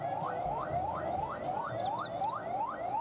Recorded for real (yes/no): yes